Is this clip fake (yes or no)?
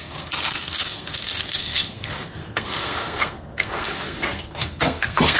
yes